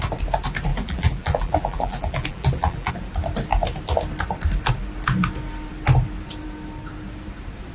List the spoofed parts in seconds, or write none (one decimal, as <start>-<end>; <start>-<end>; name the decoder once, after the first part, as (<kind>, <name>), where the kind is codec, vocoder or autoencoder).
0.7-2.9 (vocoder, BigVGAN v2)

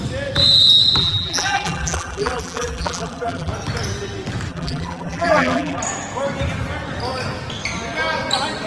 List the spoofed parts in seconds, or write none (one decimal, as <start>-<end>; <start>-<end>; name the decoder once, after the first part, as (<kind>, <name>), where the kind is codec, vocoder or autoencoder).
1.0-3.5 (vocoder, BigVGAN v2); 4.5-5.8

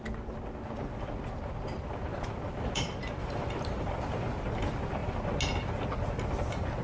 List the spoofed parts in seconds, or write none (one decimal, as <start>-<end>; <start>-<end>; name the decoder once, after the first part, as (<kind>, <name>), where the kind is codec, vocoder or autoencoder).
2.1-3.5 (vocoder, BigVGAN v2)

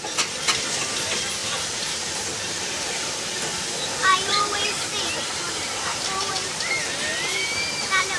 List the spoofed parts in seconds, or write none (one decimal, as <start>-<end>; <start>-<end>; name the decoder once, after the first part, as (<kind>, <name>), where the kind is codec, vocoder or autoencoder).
1.4-3.3 (vocoder, BigVGAN v2); 4.1-6.6

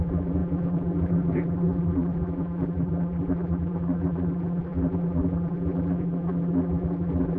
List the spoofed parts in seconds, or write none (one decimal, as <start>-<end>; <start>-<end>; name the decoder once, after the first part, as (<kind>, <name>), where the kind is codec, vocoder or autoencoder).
0.0-7.4 (vocoder, BigVGAN v2)

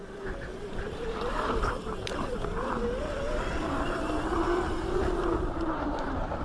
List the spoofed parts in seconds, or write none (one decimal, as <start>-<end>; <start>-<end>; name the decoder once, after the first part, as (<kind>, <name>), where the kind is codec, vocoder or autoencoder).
0.8-6.4 (vocoder, BigVGAN v2)

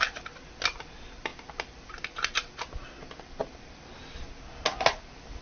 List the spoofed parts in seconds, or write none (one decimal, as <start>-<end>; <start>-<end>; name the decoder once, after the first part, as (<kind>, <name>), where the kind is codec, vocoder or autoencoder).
3.4-3.9 (vocoder, BigVGAN v2)

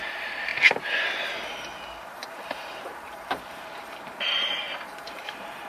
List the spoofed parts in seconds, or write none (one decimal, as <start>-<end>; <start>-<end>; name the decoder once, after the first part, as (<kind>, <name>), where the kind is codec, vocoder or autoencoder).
0.0-0.5 (vocoder, BigVGAN v2); 1.0-5.7